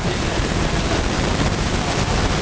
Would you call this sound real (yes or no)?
yes